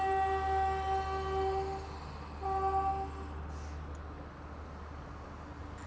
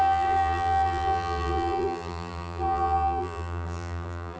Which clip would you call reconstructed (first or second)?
second